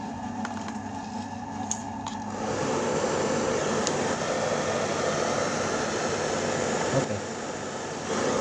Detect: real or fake real